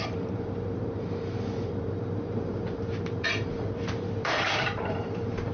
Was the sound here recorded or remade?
remade